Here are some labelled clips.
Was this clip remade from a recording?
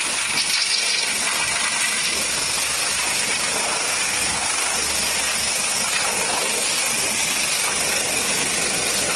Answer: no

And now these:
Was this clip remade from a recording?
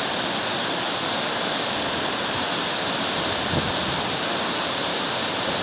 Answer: no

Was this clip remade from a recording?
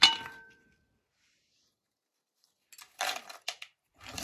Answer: yes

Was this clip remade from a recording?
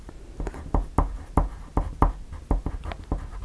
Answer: no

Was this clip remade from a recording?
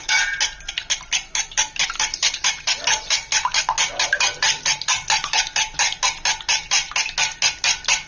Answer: no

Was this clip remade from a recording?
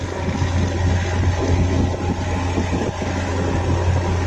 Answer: no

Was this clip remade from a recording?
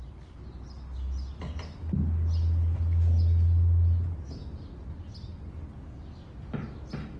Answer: no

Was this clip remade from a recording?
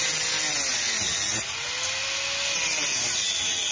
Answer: no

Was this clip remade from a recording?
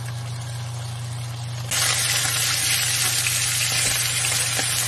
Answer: no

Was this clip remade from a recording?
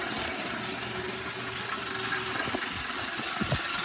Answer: no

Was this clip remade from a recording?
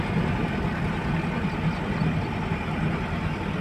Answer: no